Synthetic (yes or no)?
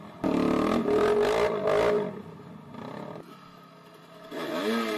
no